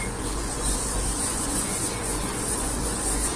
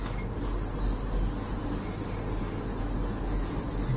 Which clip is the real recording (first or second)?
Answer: second